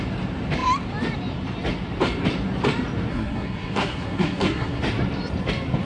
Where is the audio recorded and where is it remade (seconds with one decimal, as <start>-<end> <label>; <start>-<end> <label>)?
0.0-3.1 recorded; 3.1-4.8 remade; 4.8-5.8 recorded